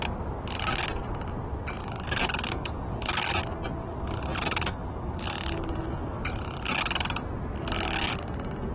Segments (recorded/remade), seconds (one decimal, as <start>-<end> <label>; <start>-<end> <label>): 0.0-1.8 recorded; 1.8-3.4 remade; 3.4-3.8 recorded; 3.8-6.8 remade; 6.8-8.7 recorded

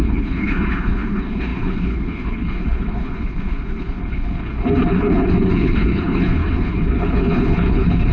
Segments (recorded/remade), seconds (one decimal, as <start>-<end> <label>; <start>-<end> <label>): 0.0-8.1 remade

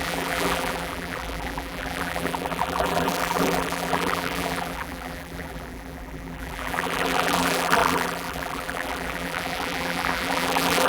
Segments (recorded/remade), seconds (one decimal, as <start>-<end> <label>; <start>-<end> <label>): 0.0-10.9 remade

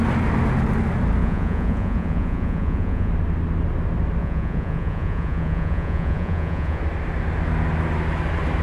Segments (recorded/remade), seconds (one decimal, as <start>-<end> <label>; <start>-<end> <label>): 0.0-1.2 recorded; 1.2-3.1 remade; 3.1-4.2 recorded; 4.2-6.8 remade; 6.8-8.6 recorded

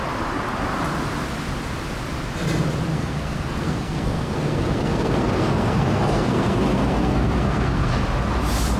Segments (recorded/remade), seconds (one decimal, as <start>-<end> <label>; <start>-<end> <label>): 0.0-2.9 recorded; 2.9-7.9 remade; 7.9-8.8 recorded